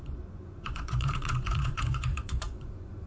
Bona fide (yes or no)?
no